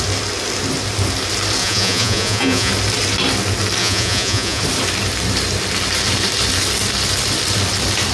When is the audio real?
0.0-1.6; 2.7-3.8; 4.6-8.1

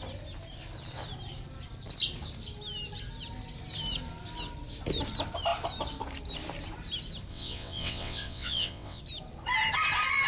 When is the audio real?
0.0-7.3; 9.0-10.3

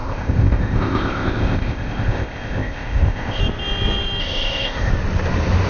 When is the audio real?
3.4-4.2; 4.9-5.7